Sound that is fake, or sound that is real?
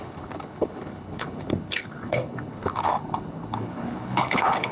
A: fake